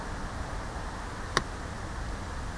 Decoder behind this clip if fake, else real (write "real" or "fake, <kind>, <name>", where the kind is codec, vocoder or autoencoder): real